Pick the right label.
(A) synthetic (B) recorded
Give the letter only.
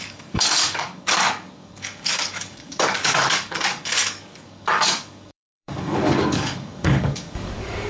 A